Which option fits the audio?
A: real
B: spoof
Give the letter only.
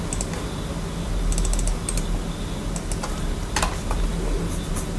A